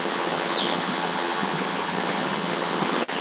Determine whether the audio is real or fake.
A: fake